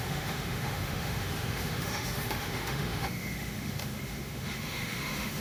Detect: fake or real fake